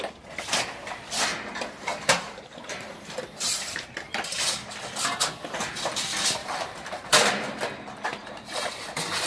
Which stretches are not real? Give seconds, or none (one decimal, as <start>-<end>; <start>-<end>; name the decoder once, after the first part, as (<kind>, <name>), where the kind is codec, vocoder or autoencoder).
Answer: 1.3-3.9 (vocoder, BigVGAN v2); 6.4-7.6